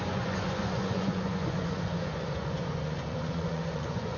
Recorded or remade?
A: remade